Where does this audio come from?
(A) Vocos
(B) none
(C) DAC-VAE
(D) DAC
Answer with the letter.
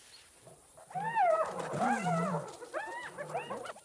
B